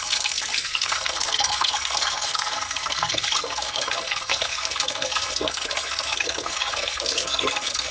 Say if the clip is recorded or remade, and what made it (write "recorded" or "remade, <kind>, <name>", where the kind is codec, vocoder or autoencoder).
remade, codec, SNAC